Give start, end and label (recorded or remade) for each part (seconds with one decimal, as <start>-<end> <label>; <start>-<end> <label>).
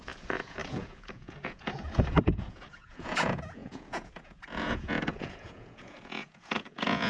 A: 0.0-7.1 remade